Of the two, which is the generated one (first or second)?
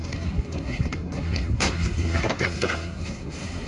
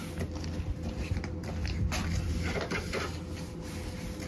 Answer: first